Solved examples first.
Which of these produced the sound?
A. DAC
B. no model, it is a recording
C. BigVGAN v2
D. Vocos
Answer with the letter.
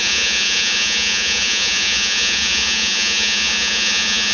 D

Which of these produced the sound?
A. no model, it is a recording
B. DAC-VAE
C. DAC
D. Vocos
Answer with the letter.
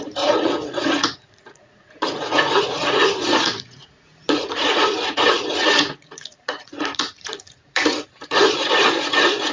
D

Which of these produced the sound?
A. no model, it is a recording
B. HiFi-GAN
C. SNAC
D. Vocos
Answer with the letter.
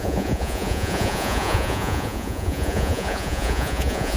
D